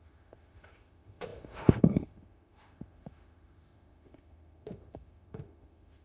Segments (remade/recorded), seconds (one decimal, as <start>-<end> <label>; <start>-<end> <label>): 0.0-6.0 remade